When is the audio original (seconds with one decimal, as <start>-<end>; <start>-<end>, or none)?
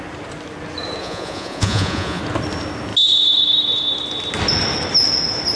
0.0-1.0; 2.2-5.6